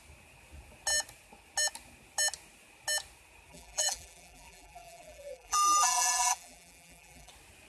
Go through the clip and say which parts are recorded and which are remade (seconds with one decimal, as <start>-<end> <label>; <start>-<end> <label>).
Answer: 0.0-3.5 recorded; 3.5-7.3 remade; 7.3-7.7 recorded

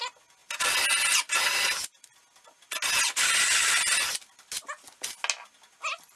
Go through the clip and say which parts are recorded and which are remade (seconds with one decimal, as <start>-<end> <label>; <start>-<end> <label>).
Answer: 0.0-6.2 recorded

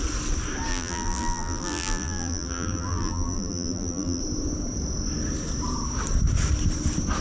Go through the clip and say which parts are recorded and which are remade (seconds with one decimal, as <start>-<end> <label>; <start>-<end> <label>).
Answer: 0.0-0.7 recorded; 0.7-4.2 remade; 4.2-7.2 recorded

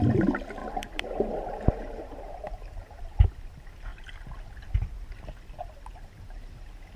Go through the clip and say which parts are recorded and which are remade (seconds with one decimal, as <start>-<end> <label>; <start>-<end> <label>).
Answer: 0.0-0.6 recorded; 0.6-3.3 remade; 3.3-7.0 recorded

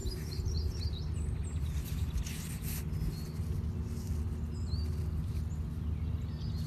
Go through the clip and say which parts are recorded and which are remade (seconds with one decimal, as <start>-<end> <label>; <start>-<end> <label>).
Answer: 0.0-0.9 remade; 0.9-6.7 recorded

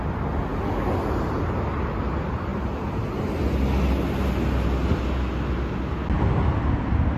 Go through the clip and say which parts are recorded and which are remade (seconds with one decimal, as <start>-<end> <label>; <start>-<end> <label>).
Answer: 0.0-7.2 recorded

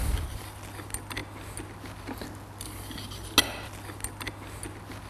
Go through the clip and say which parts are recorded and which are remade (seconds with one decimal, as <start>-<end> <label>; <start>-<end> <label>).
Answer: 0.0-5.1 recorded

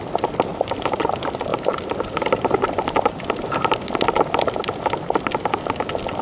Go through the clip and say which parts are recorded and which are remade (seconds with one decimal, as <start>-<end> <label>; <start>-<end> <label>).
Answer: 0.0-0.5 recorded; 0.5-1.0 remade; 1.0-6.2 recorded